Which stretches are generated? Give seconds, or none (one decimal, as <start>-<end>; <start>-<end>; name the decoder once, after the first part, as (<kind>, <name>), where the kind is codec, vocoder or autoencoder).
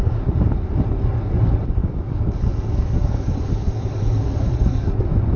1.8-5.0 (codec, DAC)